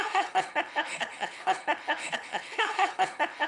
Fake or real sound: fake